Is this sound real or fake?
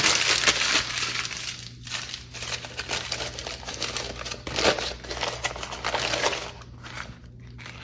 real